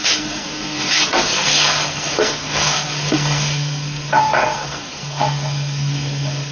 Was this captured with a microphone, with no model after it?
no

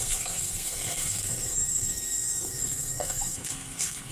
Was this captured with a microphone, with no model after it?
no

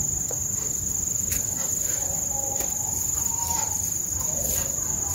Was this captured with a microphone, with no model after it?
yes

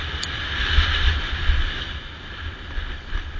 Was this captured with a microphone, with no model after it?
yes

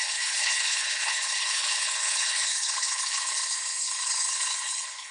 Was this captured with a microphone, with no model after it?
no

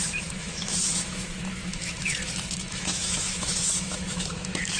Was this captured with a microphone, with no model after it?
no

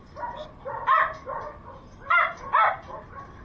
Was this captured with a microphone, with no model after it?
yes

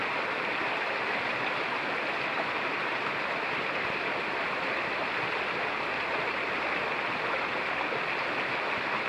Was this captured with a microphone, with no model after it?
yes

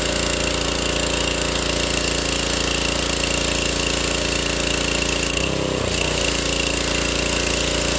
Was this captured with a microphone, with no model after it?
yes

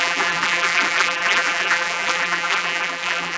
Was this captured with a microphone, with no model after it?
no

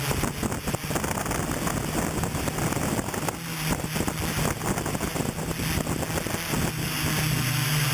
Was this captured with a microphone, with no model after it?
yes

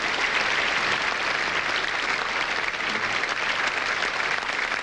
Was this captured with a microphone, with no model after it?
yes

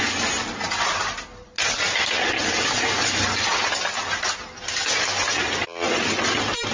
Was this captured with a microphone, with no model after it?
yes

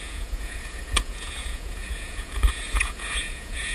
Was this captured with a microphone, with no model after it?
no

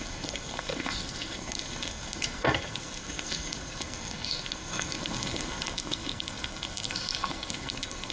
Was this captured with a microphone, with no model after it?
no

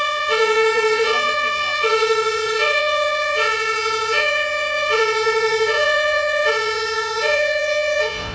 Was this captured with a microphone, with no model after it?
no